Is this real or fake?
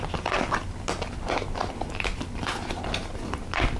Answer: real